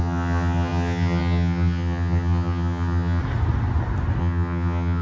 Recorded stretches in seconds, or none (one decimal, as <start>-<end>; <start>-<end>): 3.2-4.2